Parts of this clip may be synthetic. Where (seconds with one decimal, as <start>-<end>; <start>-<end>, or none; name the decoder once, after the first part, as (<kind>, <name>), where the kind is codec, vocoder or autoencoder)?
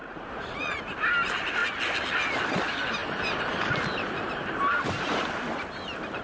0.0-0.8 (vocoder, Vocos)